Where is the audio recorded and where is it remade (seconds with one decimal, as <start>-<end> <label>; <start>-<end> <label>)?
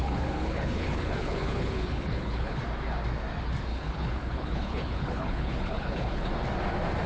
0.0-2.6 remade; 2.6-3.7 recorded; 3.7-6.3 remade; 6.3-7.1 recorded